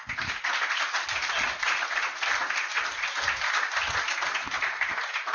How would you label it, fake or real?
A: real